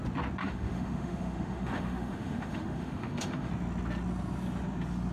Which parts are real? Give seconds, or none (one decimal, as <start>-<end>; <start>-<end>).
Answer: 0.0-0.4; 3.5-5.1